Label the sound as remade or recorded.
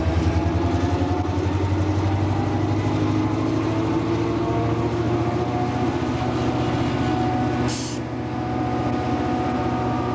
recorded